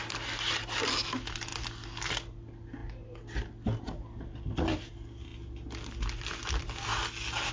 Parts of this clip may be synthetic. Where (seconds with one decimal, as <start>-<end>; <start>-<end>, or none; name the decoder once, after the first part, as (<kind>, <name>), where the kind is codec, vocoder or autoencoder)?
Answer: none